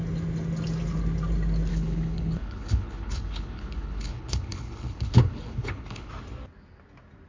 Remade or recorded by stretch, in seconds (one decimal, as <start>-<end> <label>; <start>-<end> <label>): 0.0-1.7 recorded; 1.7-6.1 remade; 6.1-7.3 recorded